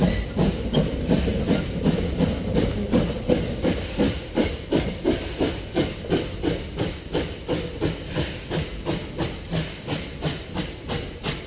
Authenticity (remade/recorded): recorded